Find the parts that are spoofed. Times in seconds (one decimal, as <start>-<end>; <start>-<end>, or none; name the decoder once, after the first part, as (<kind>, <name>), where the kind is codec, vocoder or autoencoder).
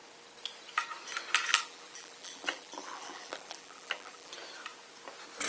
1.5-4.3 (vocoder, BigVGAN v2)